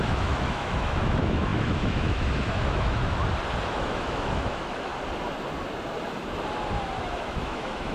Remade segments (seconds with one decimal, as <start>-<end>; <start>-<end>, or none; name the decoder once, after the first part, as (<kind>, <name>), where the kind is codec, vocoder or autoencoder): 0.0-3.2 (autoencoder, DAC-VAE); 3.7-4.9; 7.0-7.9